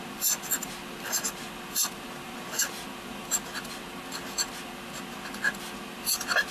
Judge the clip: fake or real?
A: real